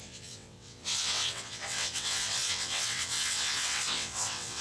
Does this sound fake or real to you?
fake